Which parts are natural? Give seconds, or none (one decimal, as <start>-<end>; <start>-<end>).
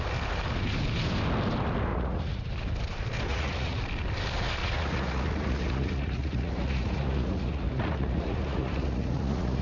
0.0-1.9; 2.5-3.3; 3.8-4.6